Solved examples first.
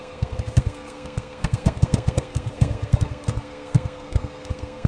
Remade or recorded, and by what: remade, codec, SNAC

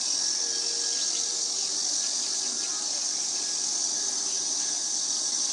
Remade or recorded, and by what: recorded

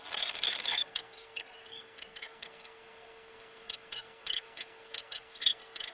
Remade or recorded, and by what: remade, codec, SNAC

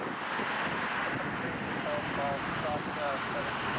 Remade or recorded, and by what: recorded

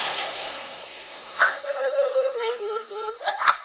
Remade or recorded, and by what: remade, codec, SNAC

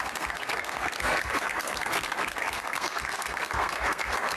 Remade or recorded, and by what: remade, codec, SNAC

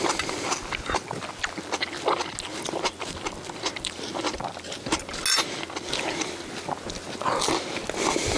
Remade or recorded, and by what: recorded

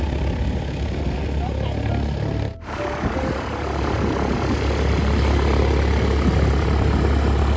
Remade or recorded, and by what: recorded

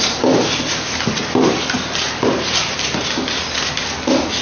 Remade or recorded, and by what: recorded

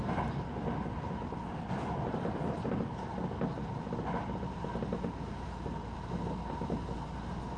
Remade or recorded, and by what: recorded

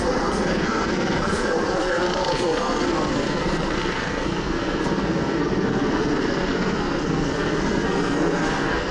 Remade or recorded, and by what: remade, codec, SNAC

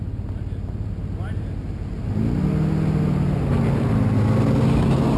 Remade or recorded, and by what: recorded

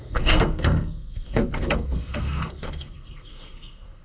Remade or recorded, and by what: remade, codec, SNAC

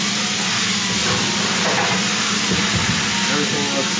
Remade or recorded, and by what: recorded